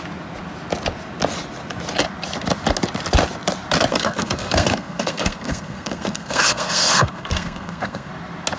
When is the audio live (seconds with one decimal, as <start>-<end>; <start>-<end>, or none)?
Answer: 0.0-3.9; 8.1-8.6